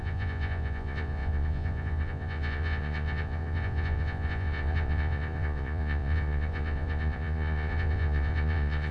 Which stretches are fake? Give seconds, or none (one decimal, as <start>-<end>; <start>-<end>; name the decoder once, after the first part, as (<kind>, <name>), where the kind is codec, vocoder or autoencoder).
0.0-8.9 (vocoder, Vocos)